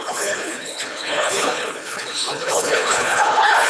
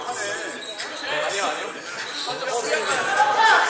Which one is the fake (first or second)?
first